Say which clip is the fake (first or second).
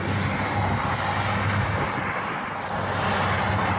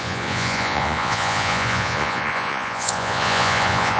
second